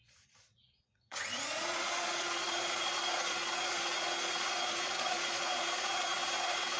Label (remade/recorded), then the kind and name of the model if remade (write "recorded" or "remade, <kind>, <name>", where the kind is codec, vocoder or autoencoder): remade, vocoder, Vocos